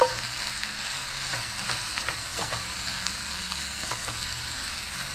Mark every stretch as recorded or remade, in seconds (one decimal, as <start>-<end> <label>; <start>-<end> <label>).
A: 0.0-5.1 remade